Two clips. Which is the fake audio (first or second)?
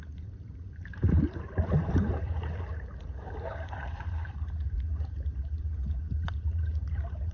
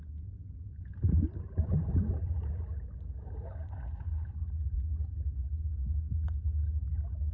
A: first